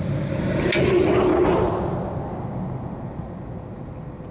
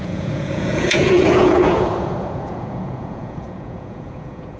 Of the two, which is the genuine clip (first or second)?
first